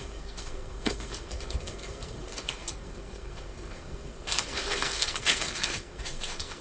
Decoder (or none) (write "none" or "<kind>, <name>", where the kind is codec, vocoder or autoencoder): codec, SNAC